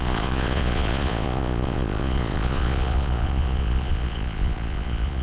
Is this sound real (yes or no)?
no